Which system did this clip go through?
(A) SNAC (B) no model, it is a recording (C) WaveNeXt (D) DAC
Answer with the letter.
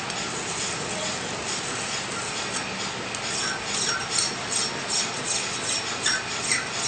B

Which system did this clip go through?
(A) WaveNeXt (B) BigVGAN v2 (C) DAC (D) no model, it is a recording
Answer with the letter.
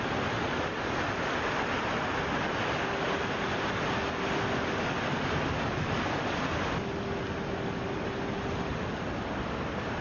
D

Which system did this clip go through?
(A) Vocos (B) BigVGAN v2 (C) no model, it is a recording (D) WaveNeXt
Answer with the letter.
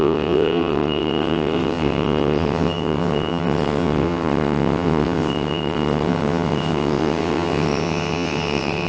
D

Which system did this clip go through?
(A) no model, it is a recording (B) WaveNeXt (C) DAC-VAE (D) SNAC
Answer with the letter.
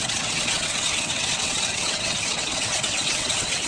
B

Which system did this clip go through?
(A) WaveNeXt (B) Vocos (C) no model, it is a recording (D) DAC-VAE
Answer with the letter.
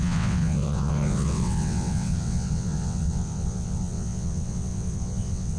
A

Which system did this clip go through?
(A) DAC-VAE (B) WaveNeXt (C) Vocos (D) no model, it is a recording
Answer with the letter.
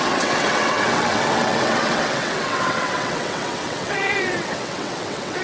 B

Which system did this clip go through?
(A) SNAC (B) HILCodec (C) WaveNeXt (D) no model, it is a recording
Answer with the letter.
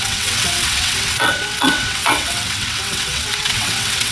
C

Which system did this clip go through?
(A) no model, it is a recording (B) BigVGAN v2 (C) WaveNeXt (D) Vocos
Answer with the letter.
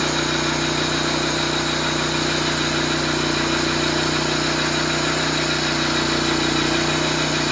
A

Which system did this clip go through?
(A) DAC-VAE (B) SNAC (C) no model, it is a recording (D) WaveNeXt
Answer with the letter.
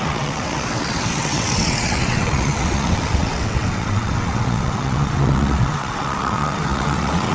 D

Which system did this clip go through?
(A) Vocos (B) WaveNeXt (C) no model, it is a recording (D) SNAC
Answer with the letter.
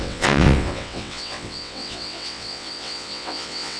B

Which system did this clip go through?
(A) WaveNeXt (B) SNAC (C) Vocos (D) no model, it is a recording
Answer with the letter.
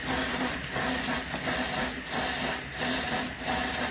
D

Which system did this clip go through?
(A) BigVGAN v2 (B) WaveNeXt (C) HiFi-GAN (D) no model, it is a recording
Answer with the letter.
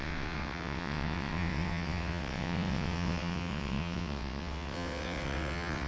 B